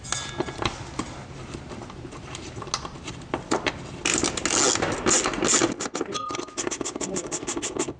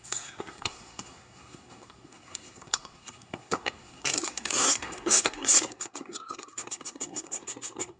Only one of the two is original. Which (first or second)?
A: first